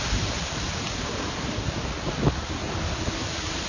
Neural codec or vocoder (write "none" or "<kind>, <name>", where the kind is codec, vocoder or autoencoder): none